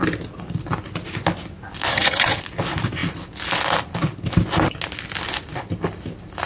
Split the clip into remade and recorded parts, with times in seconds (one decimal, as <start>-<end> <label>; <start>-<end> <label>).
0.0-1.9 recorded; 1.9-2.4 remade; 2.4-6.5 recorded